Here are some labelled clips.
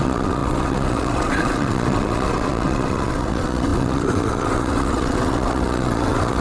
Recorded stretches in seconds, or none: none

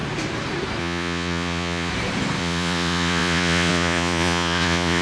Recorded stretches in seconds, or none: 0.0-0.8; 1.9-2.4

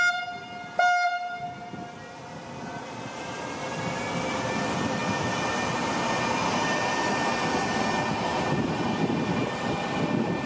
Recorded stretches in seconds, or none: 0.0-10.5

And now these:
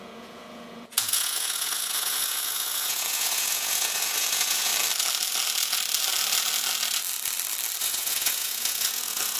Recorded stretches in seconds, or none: 4.7-7.8

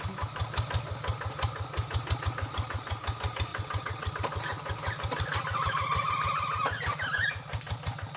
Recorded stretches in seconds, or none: 0.0-3.5; 4.1-8.2

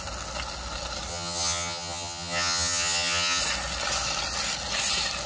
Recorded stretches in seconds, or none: 0.0-1.1; 3.4-5.3

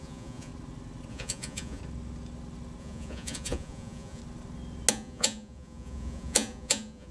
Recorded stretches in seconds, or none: 0.5-1.1; 1.8-2.8; 4.2-4.9